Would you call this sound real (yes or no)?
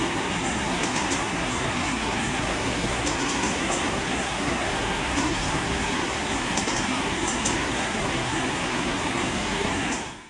no